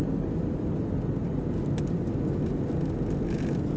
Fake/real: real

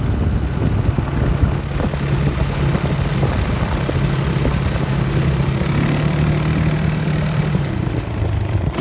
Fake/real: real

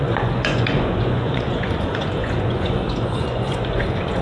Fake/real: fake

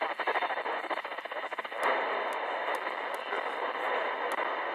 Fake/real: real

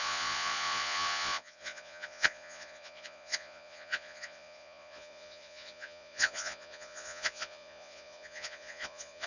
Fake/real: fake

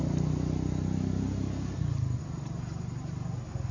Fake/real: real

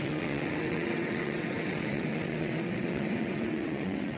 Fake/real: fake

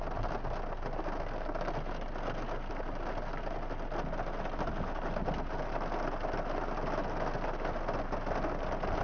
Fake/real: real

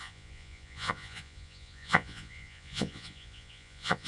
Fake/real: fake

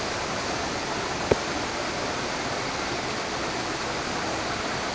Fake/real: real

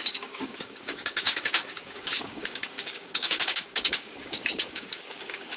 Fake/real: fake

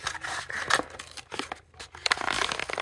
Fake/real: real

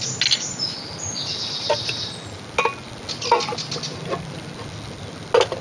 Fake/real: real